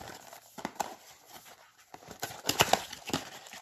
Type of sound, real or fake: real